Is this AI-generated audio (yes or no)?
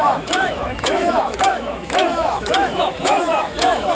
yes